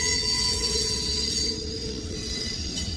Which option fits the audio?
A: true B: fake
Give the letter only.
B